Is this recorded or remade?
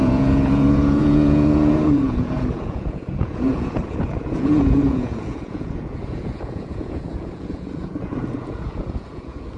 remade